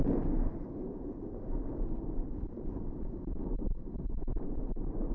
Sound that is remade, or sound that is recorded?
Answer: recorded